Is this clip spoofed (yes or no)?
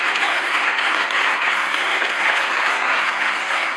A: yes